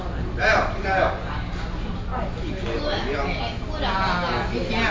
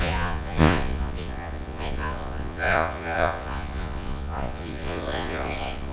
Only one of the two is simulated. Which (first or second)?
second